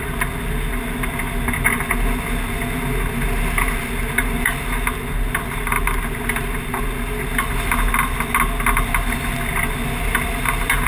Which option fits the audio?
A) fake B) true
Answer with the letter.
B